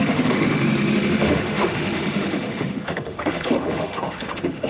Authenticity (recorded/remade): remade